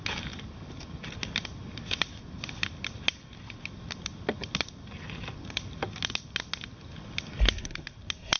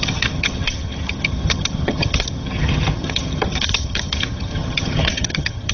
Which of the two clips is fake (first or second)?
second